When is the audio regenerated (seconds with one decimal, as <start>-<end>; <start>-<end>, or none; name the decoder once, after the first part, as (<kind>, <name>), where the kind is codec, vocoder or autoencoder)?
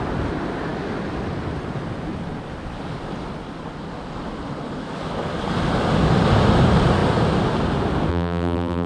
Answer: 8.1-8.9 (vocoder, BigVGAN v2)